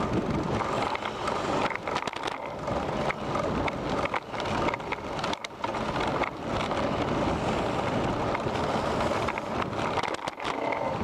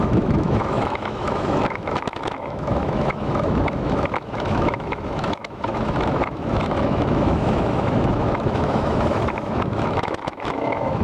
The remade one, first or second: second